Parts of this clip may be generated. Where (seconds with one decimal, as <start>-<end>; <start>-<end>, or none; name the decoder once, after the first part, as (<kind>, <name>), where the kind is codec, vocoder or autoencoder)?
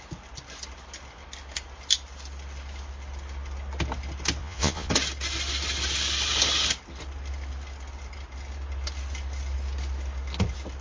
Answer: 4.4-4.9 (vocoder, Vocos)